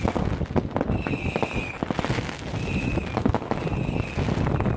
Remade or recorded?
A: recorded